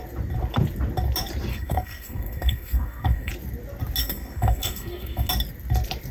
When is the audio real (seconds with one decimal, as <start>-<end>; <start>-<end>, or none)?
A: 0.0-1.5; 3.3-4.0; 5.3-6.1